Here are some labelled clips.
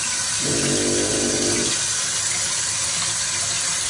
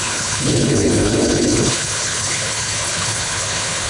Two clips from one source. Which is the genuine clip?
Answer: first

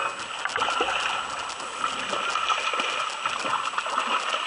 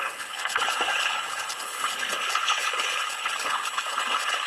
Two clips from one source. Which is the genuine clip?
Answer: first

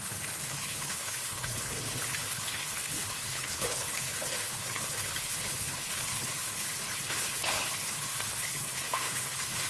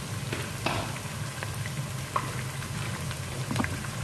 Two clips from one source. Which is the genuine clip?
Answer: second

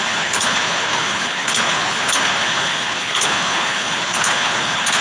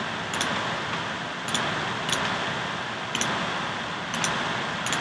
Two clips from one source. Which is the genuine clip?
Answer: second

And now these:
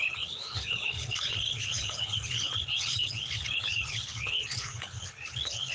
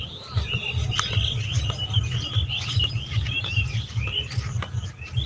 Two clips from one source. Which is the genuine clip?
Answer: second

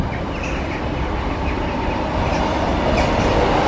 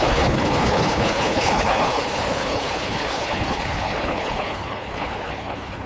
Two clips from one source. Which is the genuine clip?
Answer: first